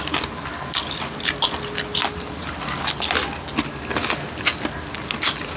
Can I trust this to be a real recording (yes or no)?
yes